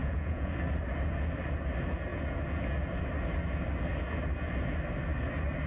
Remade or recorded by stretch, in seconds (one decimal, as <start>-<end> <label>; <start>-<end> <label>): 0.0-0.5 remade; 0.5-5.7 recorded